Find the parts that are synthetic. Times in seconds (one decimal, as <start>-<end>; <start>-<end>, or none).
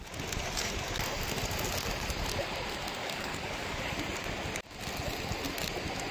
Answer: 3.0-3.8